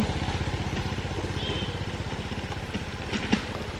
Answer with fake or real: real